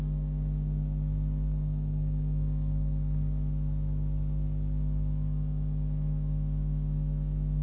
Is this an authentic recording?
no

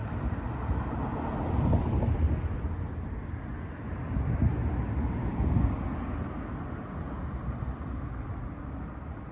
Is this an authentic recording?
yes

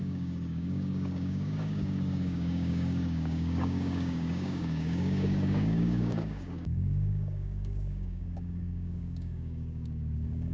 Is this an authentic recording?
no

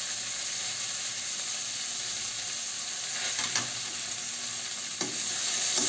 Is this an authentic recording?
yes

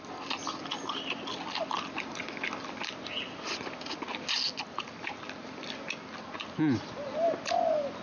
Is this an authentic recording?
yes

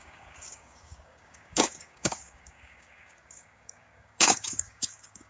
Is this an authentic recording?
no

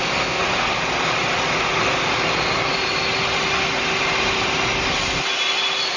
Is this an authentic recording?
yes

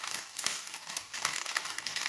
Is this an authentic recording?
no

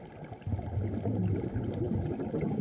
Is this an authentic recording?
yes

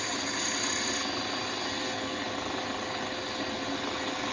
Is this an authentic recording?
yes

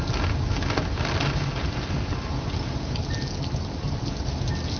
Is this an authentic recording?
yes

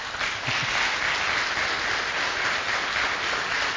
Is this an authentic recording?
yes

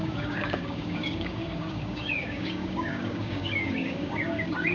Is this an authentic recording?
no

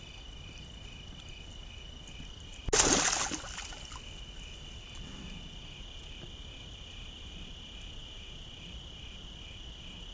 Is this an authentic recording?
yes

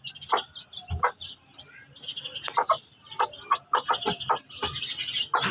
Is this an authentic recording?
yes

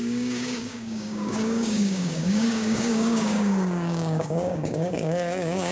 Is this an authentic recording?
no